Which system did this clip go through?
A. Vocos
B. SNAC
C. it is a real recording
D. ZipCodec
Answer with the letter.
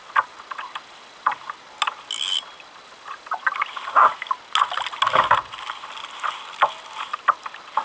C